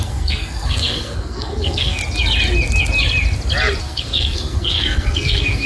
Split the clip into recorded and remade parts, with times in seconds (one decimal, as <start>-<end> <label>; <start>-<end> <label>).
0.0-2.0 remade; 2.0-3.8 recorded; 3.8-5.7 remade